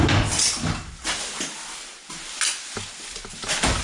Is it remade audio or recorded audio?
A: recorded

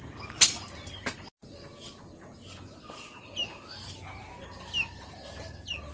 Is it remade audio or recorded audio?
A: recorded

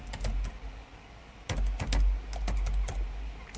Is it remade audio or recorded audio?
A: recorded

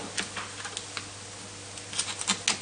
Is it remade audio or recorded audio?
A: recorded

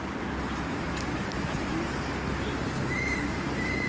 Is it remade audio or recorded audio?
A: recorded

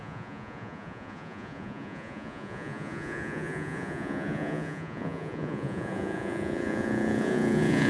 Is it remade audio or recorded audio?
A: remade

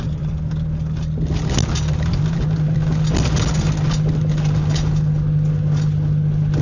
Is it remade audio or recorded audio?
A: recorded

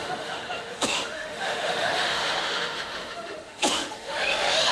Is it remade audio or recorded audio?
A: remade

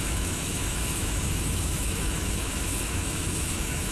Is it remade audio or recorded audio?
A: remade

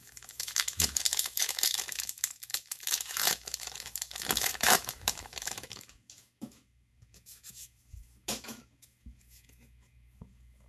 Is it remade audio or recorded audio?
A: remade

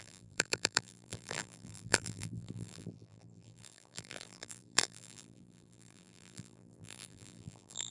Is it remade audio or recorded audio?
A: remade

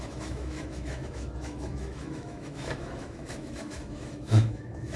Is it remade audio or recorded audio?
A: remade